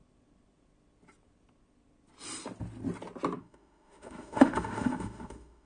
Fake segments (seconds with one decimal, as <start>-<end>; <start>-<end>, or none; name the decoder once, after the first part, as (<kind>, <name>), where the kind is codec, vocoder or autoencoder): 3.4-5.7 (autoencoder, DAC-VAE)